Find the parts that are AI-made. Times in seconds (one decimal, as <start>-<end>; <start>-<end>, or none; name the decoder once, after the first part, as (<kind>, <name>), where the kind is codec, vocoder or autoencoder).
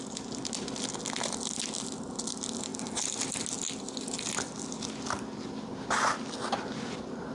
none